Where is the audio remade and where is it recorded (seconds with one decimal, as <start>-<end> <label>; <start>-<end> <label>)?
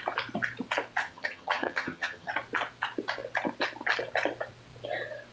0.0-1.0 recorded; 1.0-2.3 remade; 2.3-5.3 recorded